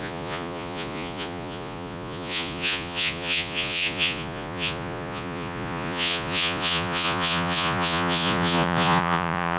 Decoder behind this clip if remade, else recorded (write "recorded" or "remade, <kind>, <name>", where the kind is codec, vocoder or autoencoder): remade, vocoder, Vocos